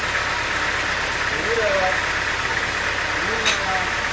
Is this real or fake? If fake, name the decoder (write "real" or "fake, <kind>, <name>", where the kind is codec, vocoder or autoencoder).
real